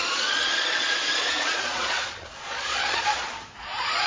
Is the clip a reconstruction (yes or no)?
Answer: yes